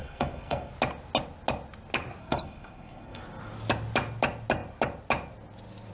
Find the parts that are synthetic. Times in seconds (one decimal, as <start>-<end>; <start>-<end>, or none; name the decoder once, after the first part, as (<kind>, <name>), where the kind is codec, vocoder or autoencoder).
0.0-0.7 (codec, SNAC); 2.2-3.2